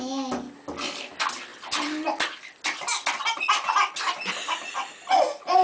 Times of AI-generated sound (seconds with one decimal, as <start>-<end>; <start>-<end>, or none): none